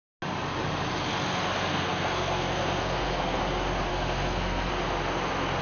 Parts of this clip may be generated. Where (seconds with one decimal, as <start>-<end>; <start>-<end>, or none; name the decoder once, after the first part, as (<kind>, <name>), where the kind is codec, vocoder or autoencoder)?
1.7-3.4 (codec, SNAC); 3.9-4.7